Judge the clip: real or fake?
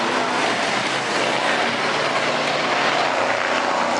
real